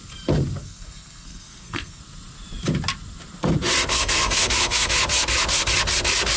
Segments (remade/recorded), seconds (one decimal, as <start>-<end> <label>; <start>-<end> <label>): 0.0-0.6 recorded; 0.6-2.0 remade; 2.0-3.9 recorded; 3.9-4.9 remade; 4.9-6.4 recorded